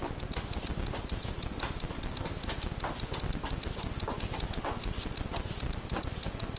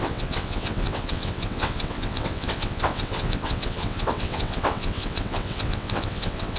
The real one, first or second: first